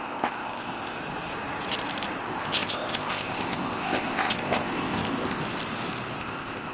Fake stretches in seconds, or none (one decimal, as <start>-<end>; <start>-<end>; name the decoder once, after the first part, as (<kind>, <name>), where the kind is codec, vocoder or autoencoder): 0.0-1.0 (codec, ZipCodec); 2.2-5.4; 6.2-6.7

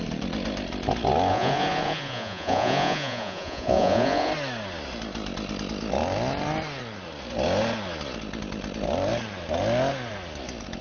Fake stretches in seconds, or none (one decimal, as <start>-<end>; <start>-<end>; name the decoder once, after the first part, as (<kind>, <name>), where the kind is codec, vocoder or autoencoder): 1.3-4.3 (vocoder, Vocos)

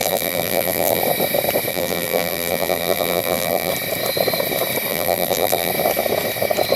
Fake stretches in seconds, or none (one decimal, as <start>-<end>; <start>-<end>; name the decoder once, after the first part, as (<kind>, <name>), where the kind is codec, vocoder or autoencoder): 0.0-1.0 (vocoder, BigVGAN v2); 1.7-3.7; 4.9-5.7

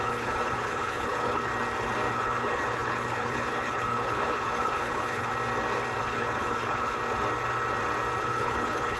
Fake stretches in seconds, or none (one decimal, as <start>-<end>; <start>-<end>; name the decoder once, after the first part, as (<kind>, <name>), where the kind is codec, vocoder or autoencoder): 0.0-1.5 (codec, HILCodec); 2.1-5.3; 6.0-7.0; 8.2-9.0

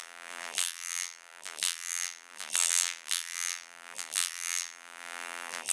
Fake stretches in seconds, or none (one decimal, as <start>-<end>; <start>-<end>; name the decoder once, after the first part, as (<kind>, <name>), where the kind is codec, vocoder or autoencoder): 0.0-5.7 (vocoder, BigVGAN v2)

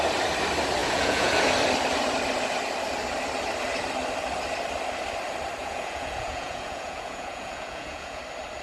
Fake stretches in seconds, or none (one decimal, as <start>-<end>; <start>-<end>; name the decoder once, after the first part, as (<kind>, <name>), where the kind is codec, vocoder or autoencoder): 0.8-1.5 (vocoder, Vocos); 5.6-8.2

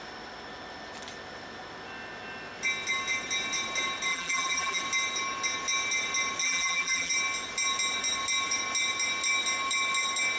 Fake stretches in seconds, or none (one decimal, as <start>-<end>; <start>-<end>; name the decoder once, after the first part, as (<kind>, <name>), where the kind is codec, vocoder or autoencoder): 4.1-4.8 (vocoder, BigVGAN v2); 6.4-7.1

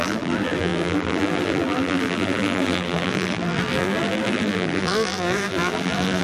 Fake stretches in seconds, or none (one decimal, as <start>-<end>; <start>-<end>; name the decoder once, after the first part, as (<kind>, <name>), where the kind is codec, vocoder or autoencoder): 0.0-6.2 (vocoder, BigVGAN v2)